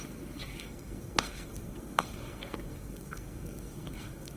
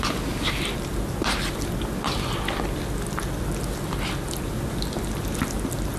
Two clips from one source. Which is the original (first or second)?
second